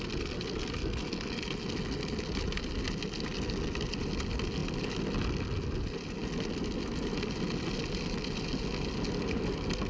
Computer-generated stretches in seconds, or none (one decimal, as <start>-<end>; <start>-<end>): none